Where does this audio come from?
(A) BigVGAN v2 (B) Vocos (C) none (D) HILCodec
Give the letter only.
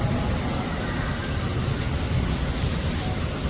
C